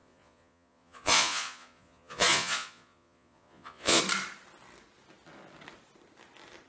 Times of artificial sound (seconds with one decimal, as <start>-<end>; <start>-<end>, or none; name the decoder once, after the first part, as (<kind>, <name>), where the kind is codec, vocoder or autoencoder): 0.0-4.0 (vocoder, Vocos)